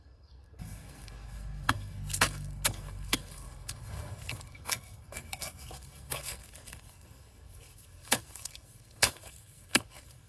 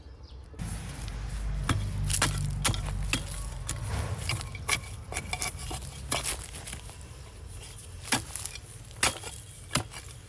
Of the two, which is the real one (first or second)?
second